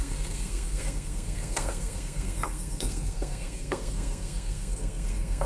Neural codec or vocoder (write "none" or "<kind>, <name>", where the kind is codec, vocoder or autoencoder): codec, SNAC